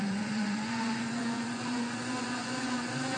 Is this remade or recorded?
remade